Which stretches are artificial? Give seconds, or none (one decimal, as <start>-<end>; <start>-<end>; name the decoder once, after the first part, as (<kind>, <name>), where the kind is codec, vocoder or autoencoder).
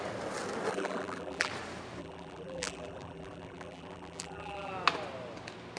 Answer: 0.7-1.5 (vocoder, BigVGAN v2); 2.0-4.7